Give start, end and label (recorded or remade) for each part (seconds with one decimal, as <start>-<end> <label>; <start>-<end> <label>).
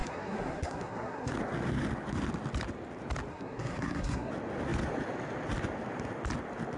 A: 0.0-1.3 remade; 1.3-3.3 recorded; 3.3-4.3 remade; 4.3-6.8 recorded